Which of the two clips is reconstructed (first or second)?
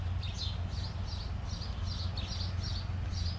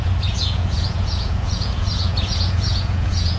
second